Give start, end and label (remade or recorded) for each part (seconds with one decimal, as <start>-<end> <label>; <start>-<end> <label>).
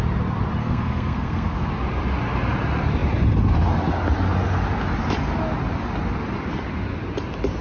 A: 0.0-0.6 recorded; 0.6-1.7 remade; 1.7-7.6 recorded